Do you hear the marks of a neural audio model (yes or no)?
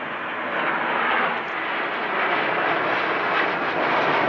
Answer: no